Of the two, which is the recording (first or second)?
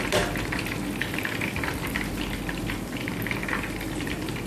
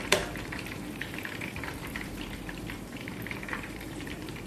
first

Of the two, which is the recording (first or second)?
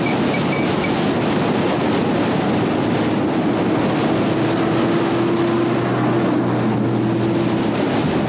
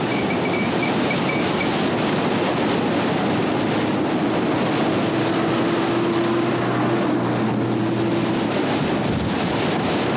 first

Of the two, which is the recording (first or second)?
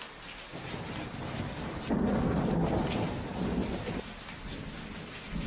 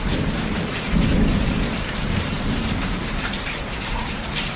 first